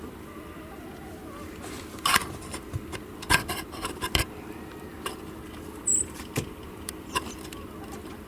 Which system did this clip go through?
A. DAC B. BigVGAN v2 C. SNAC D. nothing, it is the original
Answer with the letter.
B